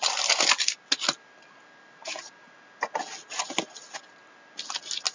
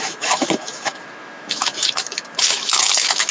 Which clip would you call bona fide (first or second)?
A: first